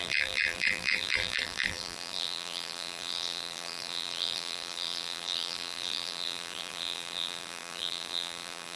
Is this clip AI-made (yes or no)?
yes